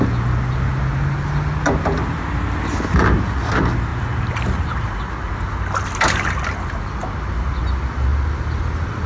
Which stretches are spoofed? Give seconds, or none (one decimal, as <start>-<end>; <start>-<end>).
3.9-5.0; 7.0-7.6